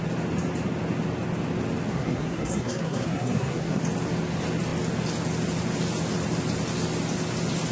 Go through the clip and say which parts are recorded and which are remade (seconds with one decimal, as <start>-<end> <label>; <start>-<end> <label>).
0.0-1.9 recorded; 1.9-3.8 remade; 3.8-7.7 recorded